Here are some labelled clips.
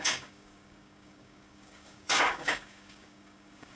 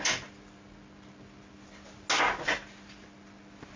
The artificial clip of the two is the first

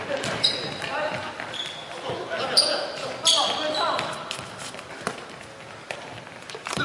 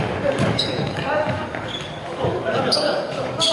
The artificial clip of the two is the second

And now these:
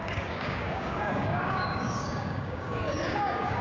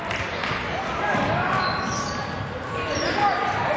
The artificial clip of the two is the first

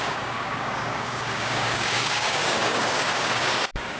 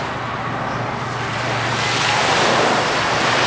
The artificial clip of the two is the first